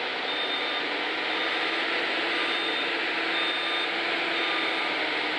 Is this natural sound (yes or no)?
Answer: yes